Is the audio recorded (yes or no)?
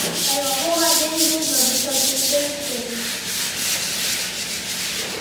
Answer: yes